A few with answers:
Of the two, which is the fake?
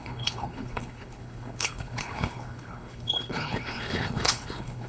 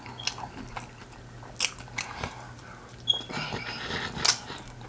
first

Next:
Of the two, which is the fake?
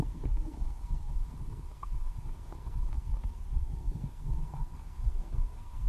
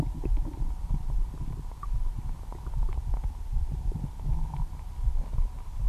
first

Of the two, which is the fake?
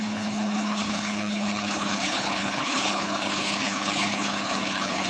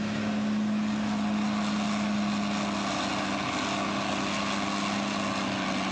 first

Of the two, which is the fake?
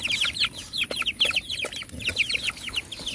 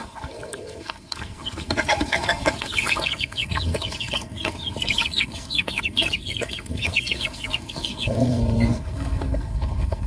second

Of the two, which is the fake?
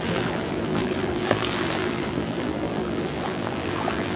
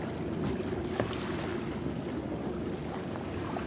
first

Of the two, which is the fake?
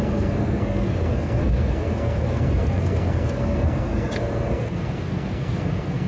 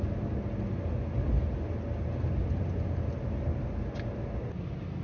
first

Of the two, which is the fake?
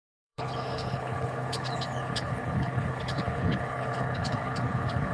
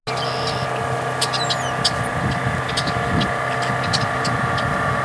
first